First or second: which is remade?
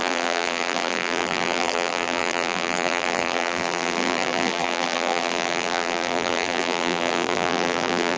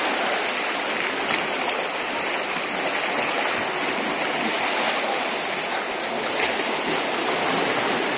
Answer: first